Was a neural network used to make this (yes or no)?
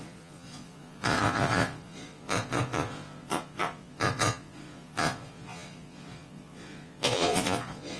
yes